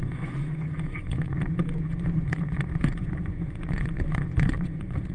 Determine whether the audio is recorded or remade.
remade